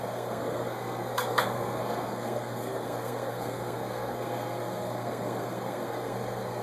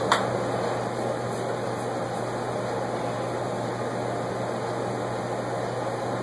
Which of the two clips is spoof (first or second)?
first